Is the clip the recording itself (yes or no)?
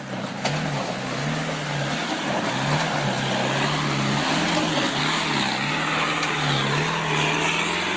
yes